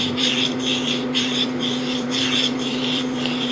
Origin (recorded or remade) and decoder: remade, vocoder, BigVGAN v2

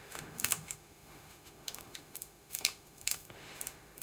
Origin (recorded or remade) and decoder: remade, autoencoder, DAC-VAE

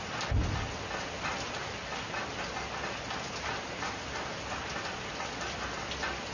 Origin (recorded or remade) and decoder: recorded